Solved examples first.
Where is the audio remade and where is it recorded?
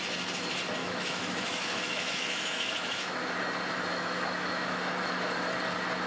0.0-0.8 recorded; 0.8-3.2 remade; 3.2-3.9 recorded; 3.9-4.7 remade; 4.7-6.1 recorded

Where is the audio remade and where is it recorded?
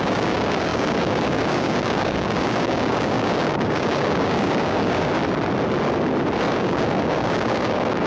0.0-5.2 remade; 5.2-6.5 recorded; 6.5-8.1 remade